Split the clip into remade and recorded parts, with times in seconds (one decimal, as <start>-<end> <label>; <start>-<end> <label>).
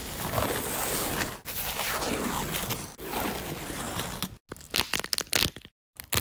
0.0-6.2 recorded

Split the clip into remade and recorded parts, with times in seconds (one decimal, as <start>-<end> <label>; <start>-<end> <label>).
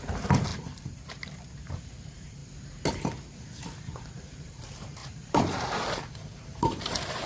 0.0-2.4 remade; 2.4-3.7 recorded; 3.7-7.3 remade